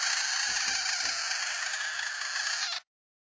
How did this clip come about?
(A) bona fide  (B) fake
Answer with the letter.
A